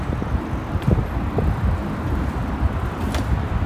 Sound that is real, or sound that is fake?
real